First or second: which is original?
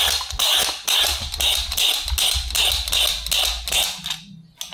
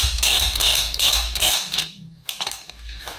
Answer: first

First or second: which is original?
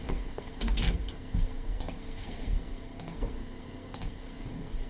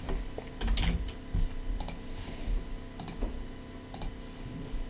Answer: second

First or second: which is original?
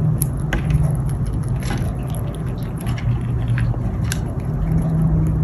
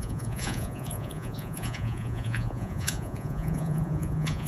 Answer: first